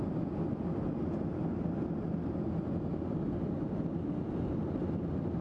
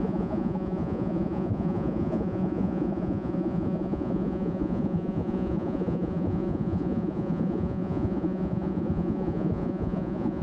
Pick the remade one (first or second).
second